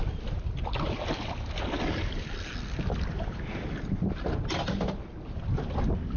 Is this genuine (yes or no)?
yes